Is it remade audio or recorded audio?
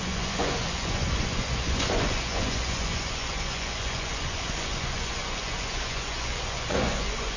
remade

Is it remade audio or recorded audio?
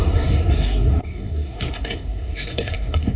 remade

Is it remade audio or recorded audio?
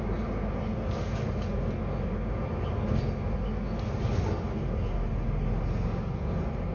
recorded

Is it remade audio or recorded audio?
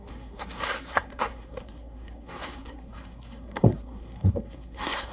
remade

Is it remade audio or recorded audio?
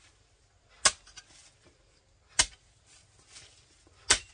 recorded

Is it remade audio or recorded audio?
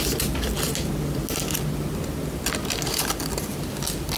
recorded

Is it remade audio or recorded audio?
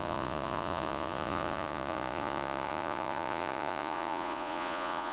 remade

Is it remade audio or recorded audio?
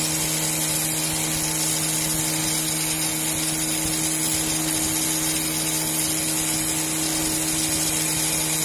recorded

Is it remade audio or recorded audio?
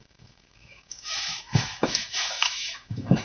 remade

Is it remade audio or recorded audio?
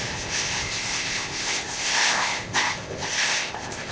remade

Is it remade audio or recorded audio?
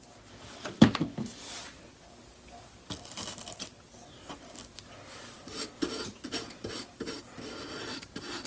recorded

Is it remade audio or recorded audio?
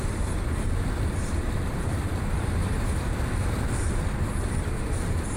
remade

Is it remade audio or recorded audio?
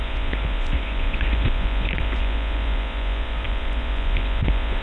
remade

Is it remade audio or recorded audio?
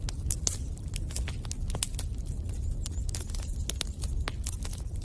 recorded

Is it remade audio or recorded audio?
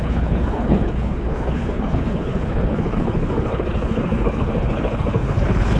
remade